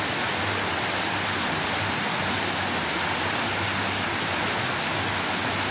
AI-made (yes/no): no